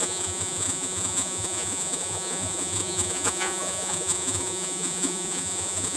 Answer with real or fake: fake